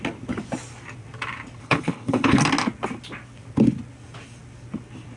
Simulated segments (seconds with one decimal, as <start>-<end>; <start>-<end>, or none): 1.6-2.4